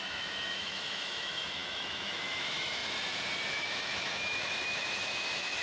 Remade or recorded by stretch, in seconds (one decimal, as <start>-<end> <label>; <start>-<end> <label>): 0.0-2.8 remade; 2.8-3.5 recorded; 3.5-5.6 remade